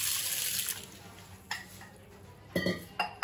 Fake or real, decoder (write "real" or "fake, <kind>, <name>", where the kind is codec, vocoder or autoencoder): real